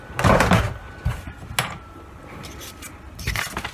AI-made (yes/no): no